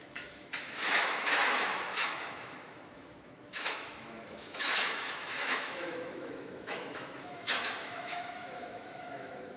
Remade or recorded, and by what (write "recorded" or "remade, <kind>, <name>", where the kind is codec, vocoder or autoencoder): remade, autoencoder, DAC-VAE